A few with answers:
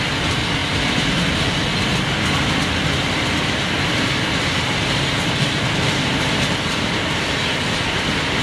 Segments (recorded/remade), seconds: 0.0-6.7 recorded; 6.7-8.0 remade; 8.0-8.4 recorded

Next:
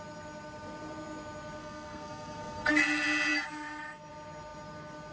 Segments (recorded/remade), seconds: 0.0-1.6 recorded; 1.6-2.7 remade; 2.7-5.1 recorded

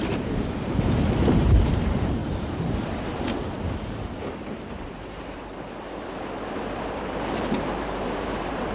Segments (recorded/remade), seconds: 0.0-8.7 remade